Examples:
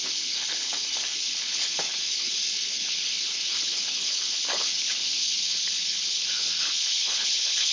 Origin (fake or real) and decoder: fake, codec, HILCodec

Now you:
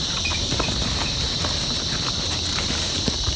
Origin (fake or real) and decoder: real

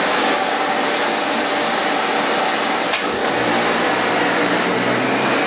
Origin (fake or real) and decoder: real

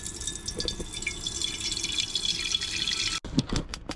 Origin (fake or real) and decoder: real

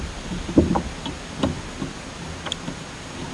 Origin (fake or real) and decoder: real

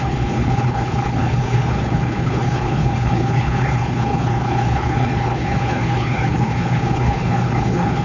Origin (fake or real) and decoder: fake, codec, HILCodec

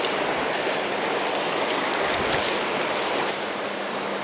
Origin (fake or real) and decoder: real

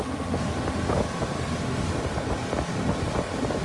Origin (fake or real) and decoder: real